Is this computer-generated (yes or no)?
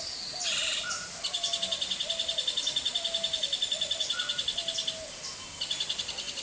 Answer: no